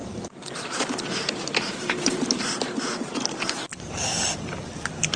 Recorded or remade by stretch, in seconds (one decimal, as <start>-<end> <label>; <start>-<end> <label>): 0.0-5.2 remade